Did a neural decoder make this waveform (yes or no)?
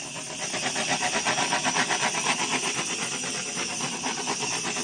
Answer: no